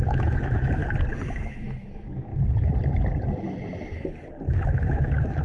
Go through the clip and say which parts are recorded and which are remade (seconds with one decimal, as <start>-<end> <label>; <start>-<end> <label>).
0.0-0.8 remade; 0.8-1.4 recorded; 1.4-2.3 remade; 2.3-4.5 recorded; 4.5-5.4 remade